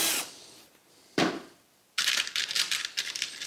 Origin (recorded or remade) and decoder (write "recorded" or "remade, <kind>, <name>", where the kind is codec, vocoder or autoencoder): remade, vocoder, BigVGAN v2